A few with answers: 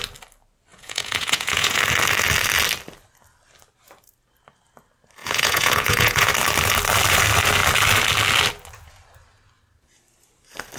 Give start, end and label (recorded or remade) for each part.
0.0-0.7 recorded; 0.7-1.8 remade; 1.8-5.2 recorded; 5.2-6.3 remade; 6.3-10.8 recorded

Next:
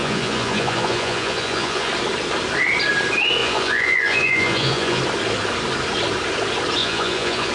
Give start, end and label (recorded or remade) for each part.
0.0-1.9 remade; 1.9-3.4 recorded; 3.4-5.0 remade; 5.0-6.8 recorded; 6.8-7.5 remade

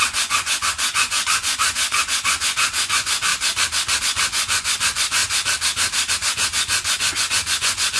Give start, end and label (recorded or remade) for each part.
0.0-3.3 remade; 3.3-4.0 recorded; 4.0-5.2 remade; 5.2-6.1 recorded; 6.1-8.0 remade